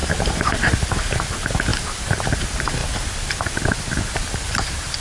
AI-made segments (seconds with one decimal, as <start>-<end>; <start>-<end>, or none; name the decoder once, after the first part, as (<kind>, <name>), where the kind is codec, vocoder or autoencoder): 0.0-2.8 (vocoder, BigVGAN v2); 3.8-5.0